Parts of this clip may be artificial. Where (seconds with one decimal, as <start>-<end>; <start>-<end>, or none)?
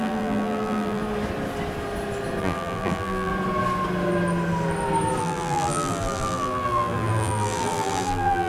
0.0-1.0; 2.4-3.3; 5.2-8.5